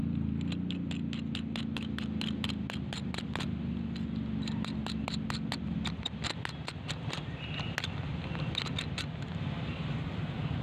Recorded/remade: recorded